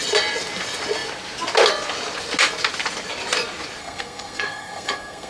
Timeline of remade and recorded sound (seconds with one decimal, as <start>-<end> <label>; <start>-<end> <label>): 0.0-3.8 recorded; 3.8-5.3 remade